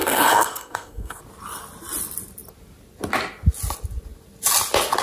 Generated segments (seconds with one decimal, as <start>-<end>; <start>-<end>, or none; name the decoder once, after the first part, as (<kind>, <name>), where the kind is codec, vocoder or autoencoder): 0.0-1.2 (codec, SNAC)